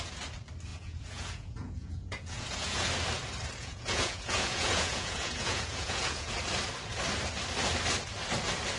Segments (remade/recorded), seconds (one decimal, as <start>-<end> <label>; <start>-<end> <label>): 0.0-0.7 recorded; 0.7-2.9 remade; 2.9-3.6 recorded; 3.6-6.4 remade; 6.4-8.8 recorded